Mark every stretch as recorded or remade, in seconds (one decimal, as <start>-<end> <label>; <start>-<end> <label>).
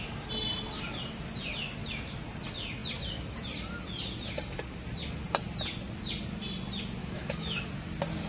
0.0-7.0 recorded; 7.0-7.6 remade; 7.6-8.3 recorded